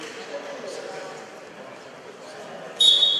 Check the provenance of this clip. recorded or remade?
recorded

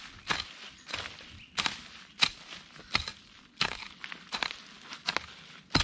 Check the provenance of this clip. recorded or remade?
recorded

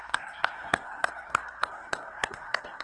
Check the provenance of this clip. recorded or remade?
remade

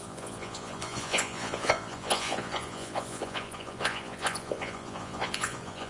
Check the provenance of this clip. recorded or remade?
remade